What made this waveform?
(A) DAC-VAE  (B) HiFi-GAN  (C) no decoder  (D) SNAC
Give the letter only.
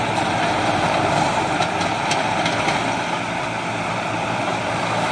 C